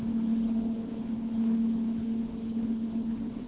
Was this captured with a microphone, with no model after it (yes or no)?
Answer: no